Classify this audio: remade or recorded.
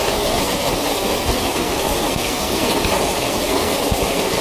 remade